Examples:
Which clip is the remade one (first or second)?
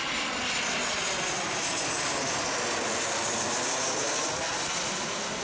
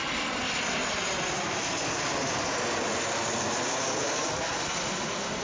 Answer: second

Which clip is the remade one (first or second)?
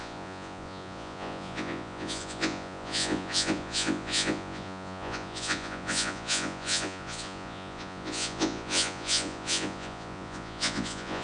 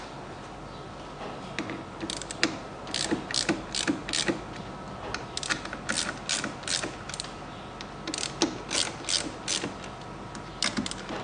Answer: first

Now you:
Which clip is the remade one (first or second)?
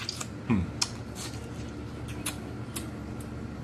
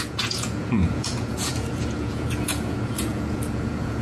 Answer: second